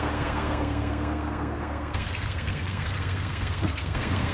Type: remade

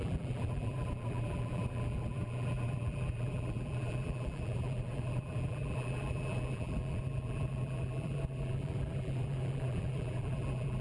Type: remade